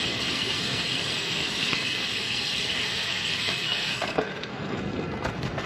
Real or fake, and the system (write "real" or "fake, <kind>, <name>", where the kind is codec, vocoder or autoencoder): fake, codec, SNAC